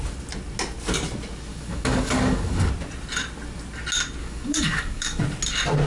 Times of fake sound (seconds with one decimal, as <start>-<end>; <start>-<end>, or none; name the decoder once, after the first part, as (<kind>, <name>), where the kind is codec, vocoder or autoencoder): 1.5-2.7 (codec, DAC); 4.2-5.2